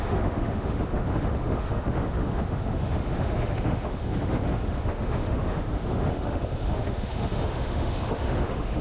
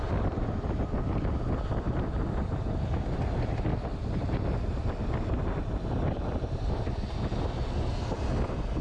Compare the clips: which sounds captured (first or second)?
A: second